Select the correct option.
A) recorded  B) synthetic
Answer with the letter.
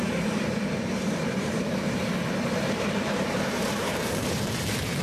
B